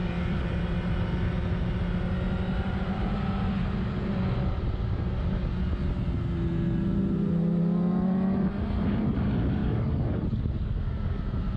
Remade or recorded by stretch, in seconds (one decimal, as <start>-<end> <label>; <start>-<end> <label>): 0.0-0.6 remade; 0.6-9.6 recorded; 9.6-11.2 remade; 11.2-11.6 recorded